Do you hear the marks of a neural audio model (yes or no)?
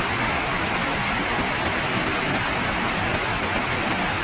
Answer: no